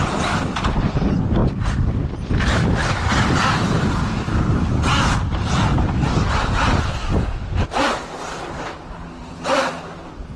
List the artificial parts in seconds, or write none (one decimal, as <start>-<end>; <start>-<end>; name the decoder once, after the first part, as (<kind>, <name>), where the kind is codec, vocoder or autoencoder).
2.8-4.5 (vocoder, BigVGAN v2); 9.2-9.7